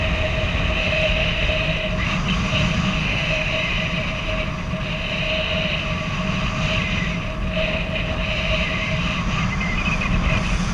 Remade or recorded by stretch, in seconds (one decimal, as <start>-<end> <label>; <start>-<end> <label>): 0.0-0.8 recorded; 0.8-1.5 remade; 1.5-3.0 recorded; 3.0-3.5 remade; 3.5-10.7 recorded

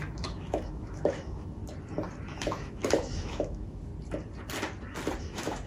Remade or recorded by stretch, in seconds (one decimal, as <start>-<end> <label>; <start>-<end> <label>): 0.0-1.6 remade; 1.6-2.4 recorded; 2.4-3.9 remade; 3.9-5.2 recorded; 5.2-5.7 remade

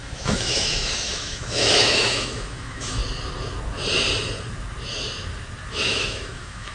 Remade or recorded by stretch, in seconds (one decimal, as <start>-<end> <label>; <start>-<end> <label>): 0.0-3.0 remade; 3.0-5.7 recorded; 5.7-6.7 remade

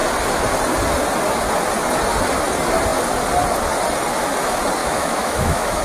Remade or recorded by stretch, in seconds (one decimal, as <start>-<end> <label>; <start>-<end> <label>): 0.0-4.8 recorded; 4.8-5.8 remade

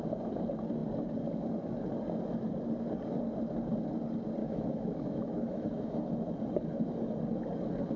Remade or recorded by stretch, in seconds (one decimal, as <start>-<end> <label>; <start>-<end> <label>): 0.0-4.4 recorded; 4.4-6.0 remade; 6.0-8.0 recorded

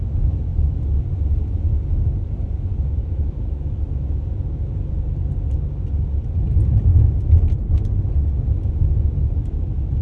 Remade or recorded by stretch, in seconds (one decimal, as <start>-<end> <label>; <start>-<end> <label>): 0.0-3.0 recorded; 3.0-3.7 remade; 3.7-10.0 recorded